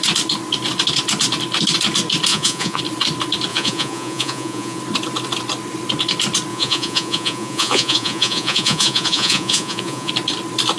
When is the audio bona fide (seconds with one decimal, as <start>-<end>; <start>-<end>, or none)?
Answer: 0.0-2.3; 2.8-3.5; 4.8-6.5; 10.1-10.8